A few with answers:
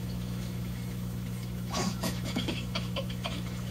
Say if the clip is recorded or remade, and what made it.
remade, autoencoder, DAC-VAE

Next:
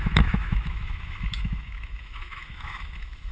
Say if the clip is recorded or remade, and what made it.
remade, autoencoder, DAC-VAE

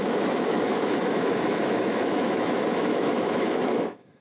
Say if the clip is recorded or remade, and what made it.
remade, autoencoder, DAC-VAE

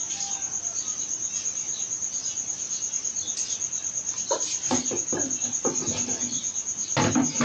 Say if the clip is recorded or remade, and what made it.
recorded